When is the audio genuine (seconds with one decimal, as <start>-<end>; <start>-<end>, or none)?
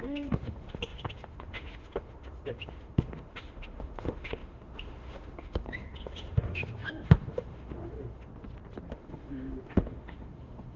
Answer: 8.3-8.9